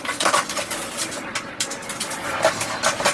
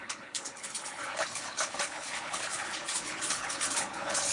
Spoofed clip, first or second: second